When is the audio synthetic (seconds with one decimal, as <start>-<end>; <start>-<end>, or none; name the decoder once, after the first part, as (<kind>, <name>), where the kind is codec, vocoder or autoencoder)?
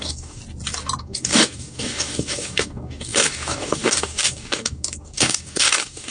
0.0-0.4 (codec, DAC); 1.0-6.1